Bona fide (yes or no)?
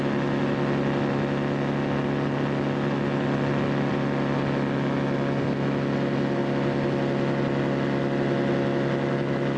yes